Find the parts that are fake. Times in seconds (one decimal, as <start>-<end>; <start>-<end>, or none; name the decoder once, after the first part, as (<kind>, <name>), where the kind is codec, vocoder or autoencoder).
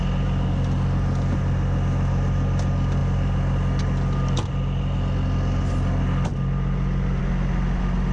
none